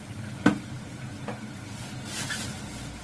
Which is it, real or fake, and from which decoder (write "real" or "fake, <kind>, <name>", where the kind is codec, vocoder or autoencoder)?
real